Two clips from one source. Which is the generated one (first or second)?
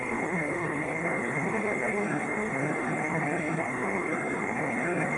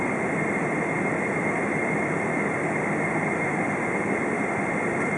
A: first